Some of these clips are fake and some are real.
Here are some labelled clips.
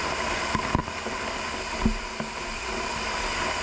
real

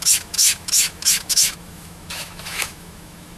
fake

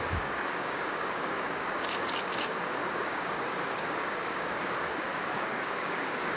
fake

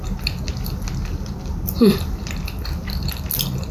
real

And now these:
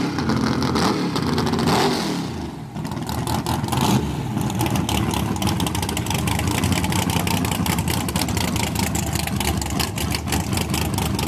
real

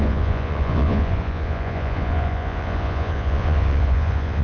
fake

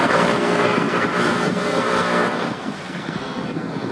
fake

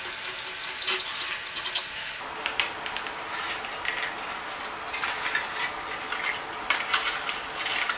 real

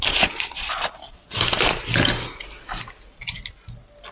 real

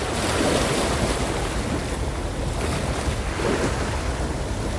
real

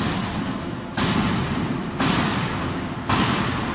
real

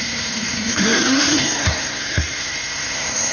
fake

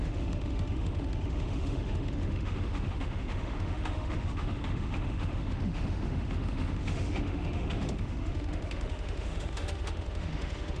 fake